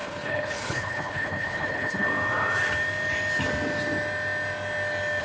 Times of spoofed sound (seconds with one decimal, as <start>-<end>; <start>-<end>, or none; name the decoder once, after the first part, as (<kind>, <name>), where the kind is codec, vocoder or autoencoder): 0.0-2.1 (codec, HILCodec)

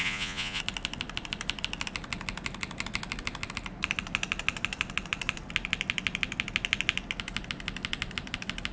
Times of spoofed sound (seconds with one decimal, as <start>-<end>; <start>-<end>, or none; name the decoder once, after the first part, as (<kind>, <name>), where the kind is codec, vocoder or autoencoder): 0.0-0.6 (vocoder, Vocos)